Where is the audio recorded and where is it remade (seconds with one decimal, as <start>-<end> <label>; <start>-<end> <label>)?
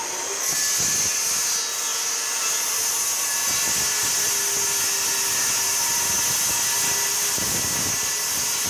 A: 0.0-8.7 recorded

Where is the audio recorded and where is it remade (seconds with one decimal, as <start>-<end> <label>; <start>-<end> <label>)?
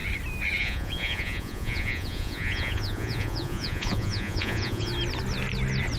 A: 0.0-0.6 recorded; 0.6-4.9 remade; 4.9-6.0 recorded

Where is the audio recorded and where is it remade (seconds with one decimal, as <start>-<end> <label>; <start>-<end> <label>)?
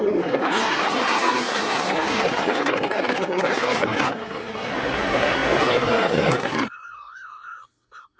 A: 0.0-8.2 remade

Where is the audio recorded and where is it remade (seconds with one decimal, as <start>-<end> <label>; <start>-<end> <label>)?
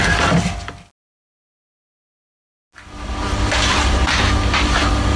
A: 0.0-5.2 recorded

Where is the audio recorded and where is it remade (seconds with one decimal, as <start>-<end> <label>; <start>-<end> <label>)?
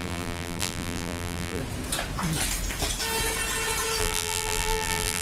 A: 0.0-1.6 remade; 1.6-4.0 recorded; 4.0-5.2 remade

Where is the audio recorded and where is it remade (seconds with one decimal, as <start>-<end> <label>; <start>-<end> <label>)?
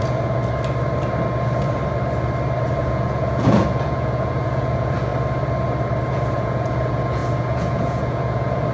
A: 0.0-0.4 remade; 0.4-2.8 recorded; 2.8-5.1 remade; 5.1-6.1 recorded; 6.1-8.7 remade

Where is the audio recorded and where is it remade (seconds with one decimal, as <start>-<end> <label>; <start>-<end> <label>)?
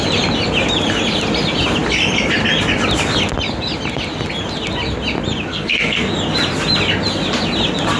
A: 0.0-5.5 recorded; 5.5-6.1 remade; 6.1-8.0 recorded